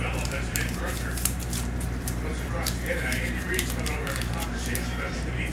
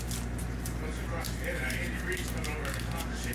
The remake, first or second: first